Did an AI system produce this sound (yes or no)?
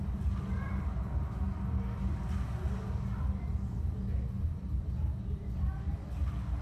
no